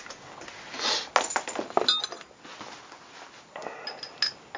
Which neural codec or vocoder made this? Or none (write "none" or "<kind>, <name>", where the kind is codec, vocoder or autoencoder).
none